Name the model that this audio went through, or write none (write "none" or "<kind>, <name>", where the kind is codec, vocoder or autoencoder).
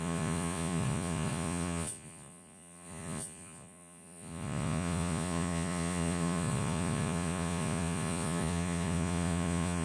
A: vocoder, Vocos